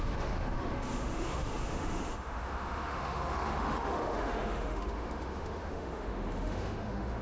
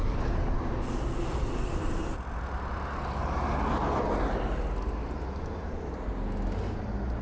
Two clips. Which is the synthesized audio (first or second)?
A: first